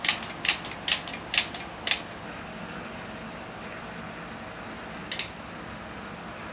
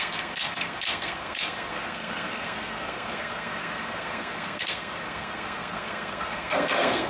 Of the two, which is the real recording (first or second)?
first